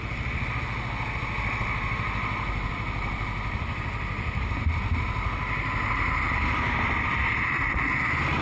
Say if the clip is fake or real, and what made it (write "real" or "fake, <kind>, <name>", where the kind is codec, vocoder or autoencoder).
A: real